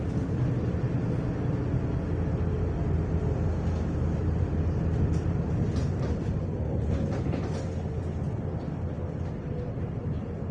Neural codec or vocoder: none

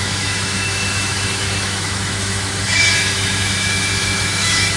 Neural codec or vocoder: autoencoder, DAC-VAE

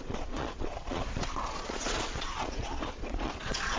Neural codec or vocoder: vocoder, Vocos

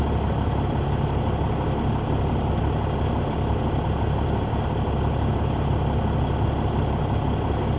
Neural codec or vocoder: none